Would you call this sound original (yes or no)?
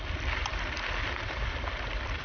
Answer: yes